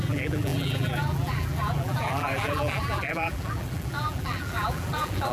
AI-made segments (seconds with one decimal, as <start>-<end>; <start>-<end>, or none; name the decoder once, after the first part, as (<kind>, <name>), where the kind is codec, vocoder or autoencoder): 0.0-5.3 (vocoder, BigVGAN v2)